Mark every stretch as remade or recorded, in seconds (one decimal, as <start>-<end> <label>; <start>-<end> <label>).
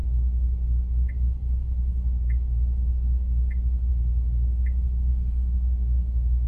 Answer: 0.0-5.1 recorded; 5.1-6.5 remade